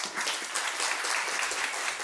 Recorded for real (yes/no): yes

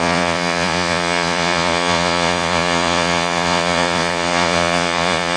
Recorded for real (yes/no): no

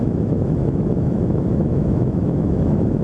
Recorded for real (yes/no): no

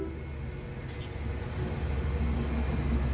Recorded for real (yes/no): yes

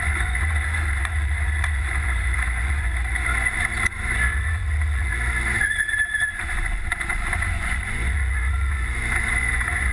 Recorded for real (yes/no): no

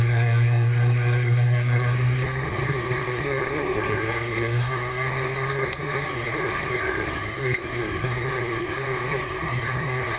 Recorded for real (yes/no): no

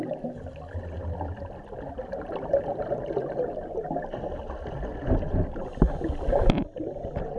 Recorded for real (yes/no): yes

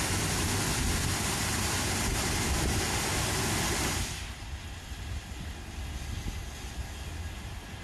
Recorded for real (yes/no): yes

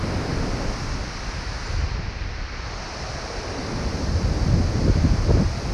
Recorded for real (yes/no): yes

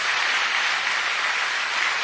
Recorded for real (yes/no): yes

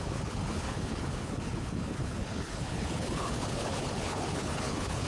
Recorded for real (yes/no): no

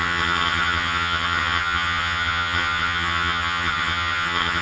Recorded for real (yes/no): no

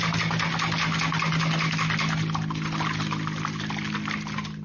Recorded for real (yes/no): yes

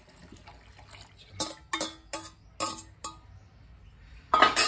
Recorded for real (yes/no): yes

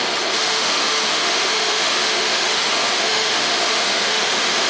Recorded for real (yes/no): no